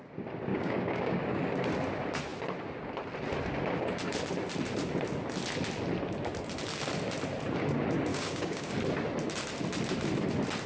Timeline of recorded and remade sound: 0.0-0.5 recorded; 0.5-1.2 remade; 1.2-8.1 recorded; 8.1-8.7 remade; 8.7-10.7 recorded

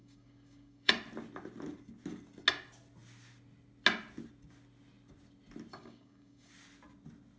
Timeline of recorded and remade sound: 0.0-0.9 remade; 0.9-5.7 recorded; 5.7-6.5 remade; 6.5-7.4 recorded

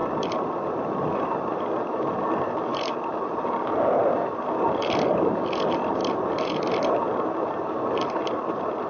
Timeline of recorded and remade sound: 0.0-8.9 recorded

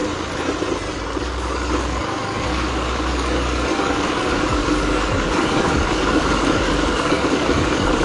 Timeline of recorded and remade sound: 0.0-1.2 recorded; 1.2-8.0 remade

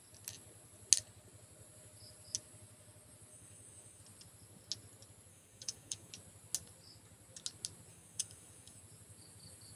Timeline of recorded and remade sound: 0.0-3.3 recorded; 3.3-4.0 remade; 4.0-5.3 recorded; 5.3-6.1 remade; 6.1-7.9 recorded; 7.9-8.8 remade; 8.8-9.8 recorded

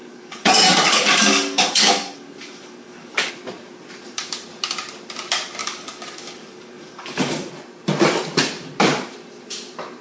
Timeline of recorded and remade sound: 0.0-3.3 remade; 3.3-5.6 recorded; 5.6-7.5 remade; 7.5-10.0 recorded

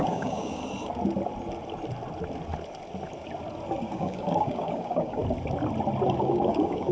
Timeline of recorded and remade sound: 0.0-0.6 remade; 0.6-3.8 recorded; 3.8-5.2 remade; 5.2-6.2 recorded; 6.2-6.9 remade